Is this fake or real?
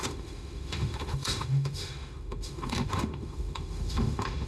fake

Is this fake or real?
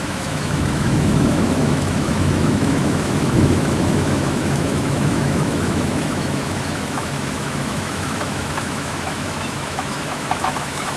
fake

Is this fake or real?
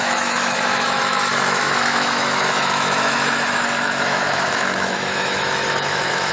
fake